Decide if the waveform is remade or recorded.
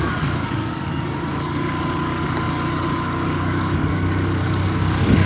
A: remade